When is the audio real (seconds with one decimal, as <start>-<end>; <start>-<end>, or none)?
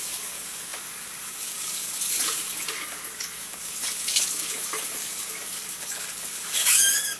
none